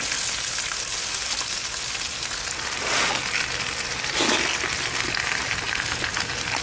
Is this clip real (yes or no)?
yes